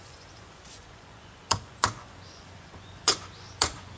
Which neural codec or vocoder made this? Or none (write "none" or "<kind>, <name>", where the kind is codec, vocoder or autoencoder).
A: vocoder, Vocos